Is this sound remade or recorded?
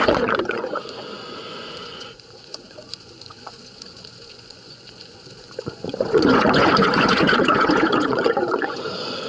remade